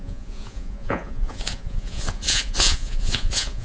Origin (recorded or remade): remade